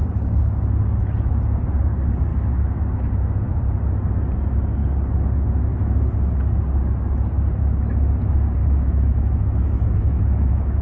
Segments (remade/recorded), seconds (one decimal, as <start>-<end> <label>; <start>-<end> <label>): 0.0-2.3 recorded; 2.3-3.5 remade; 3.5-8.6 recorded; 8.6-10.8 remade